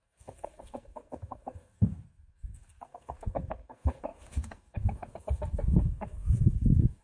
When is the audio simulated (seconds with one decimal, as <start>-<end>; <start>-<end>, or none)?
0.0-7.0

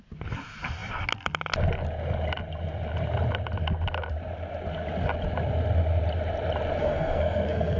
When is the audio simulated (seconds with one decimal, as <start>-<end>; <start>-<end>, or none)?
6.8-7.8